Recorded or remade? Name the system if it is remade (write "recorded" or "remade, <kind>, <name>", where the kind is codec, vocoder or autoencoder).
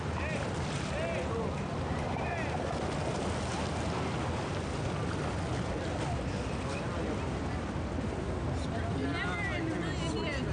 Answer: recorded